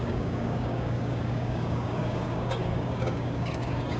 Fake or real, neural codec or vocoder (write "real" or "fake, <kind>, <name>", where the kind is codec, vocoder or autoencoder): fake, codec, DAC